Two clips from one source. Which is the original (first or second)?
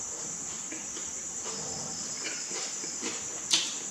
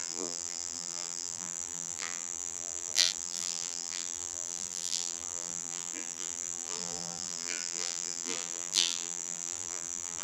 first